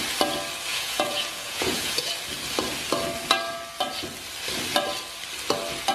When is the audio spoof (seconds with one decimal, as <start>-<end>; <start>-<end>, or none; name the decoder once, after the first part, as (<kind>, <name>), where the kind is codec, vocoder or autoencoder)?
0.7-2.1 (vocoder, Vocos)